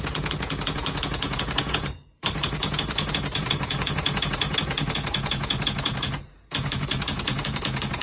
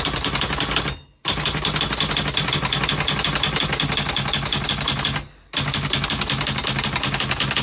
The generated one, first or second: first